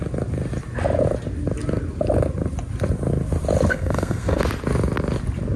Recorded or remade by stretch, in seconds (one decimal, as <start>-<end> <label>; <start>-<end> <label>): 0.0-3.7 recorded; 3.7-4.4 remade; 4.4-5.6 recorded